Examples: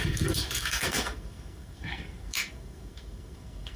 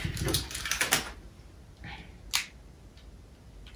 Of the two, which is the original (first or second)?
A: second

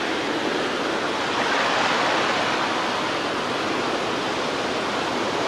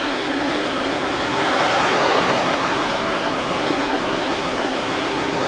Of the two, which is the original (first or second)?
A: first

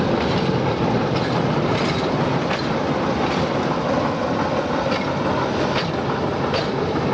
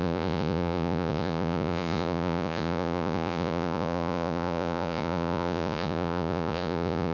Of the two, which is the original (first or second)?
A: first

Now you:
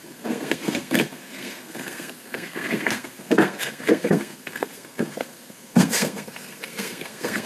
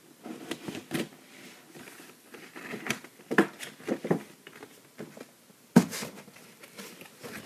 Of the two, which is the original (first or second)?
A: second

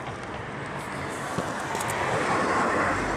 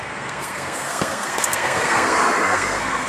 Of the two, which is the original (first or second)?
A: first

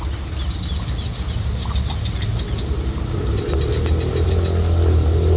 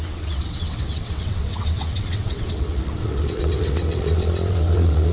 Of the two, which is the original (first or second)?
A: first